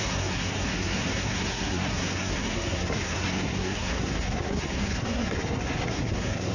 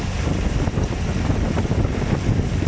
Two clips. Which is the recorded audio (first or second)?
second